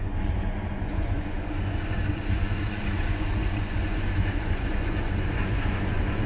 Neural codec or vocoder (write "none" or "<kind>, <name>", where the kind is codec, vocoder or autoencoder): vocoder, Vocos